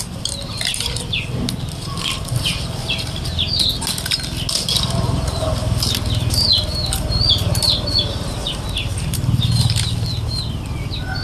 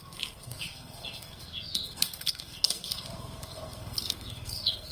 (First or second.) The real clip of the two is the first